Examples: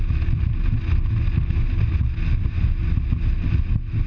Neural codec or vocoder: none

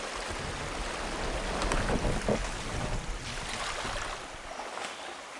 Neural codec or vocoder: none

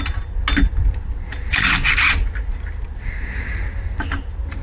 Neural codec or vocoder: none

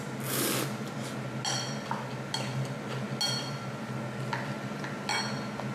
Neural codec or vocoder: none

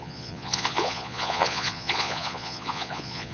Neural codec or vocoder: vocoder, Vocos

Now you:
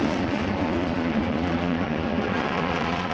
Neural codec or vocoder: vocoder, Vocos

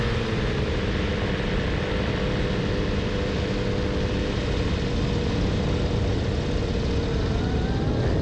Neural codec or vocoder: none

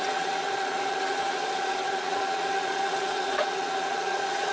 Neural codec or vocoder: vocoder, Vocos